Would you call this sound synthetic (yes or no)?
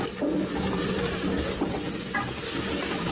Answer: no